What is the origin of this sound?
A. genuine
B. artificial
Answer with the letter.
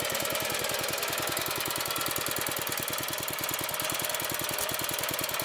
A